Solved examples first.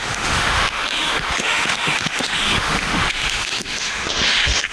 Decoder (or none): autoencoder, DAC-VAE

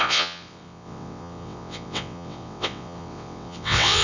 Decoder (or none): vocoder, WaveNeXt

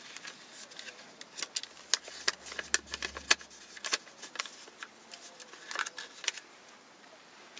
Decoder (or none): none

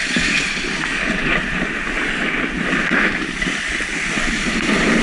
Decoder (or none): none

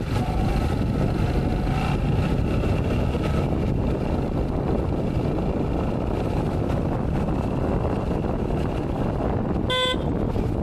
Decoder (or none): none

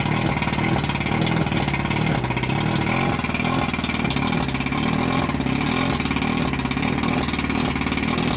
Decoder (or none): none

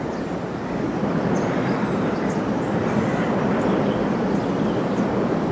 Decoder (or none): none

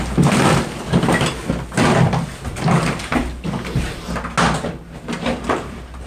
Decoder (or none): none